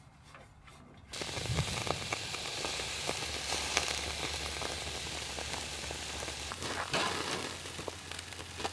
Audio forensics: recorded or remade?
recorded